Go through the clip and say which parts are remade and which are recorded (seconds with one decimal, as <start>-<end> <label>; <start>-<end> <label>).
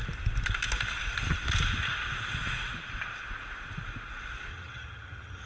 0.0-4.5 recorded; 4.5-5.5 remade